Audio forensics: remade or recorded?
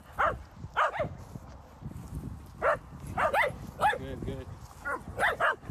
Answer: recorded